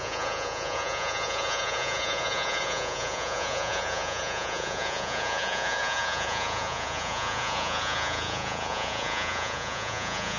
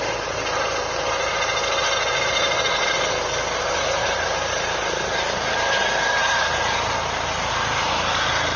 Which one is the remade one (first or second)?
first